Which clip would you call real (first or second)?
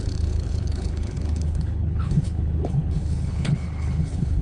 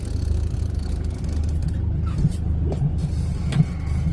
second